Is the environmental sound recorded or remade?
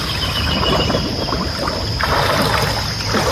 recorded